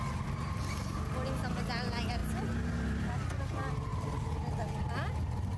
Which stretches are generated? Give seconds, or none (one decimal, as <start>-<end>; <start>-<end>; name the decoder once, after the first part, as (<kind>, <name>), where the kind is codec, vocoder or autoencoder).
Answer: none